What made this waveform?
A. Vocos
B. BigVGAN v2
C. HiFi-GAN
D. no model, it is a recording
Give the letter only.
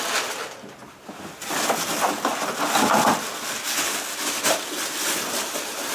D